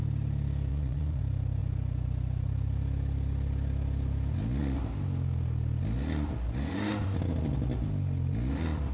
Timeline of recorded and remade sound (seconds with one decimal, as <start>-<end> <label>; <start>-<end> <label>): 0.0-0.7 recorded; 0.7-1.2 remade; 1.2-8.9 recorded